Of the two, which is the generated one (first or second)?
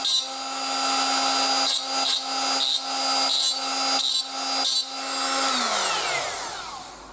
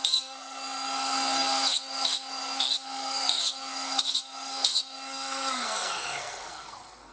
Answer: second